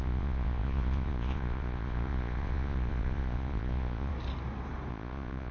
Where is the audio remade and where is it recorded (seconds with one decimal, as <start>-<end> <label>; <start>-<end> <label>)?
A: 0.0-4.1 remade; 4.1-4.9 recorded; 4.9-5.5 remade